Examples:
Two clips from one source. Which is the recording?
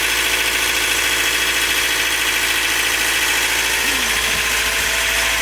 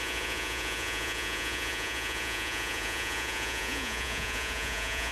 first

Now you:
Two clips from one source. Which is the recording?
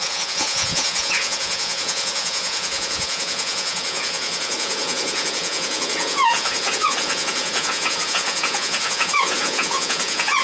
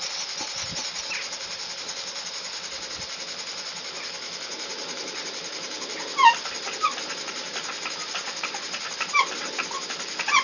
second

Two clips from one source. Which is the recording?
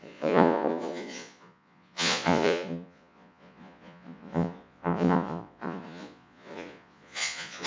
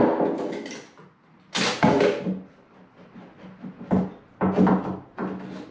second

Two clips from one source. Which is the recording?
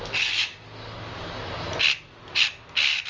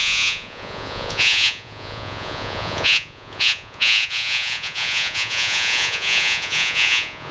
first